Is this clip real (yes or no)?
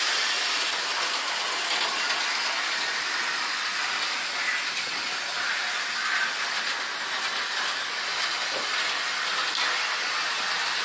yes